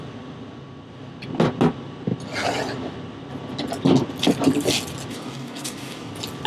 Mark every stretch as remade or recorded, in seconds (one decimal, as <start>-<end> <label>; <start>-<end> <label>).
0.0-5.1 recorded; 5.1-6.1 remade; 6.1-6.5 recorded